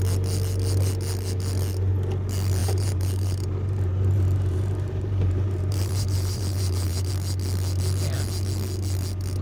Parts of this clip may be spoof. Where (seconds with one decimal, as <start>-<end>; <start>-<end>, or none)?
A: 2.6-7.1